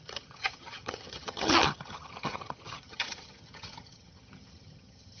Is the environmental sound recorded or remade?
remade